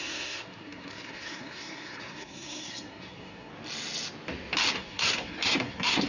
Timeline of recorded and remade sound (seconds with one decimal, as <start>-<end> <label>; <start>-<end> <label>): 0.0-3.5 remade; 3.5-4.7 recorded; 4.7-6.1 remade